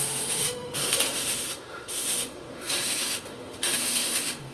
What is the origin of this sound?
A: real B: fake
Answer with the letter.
B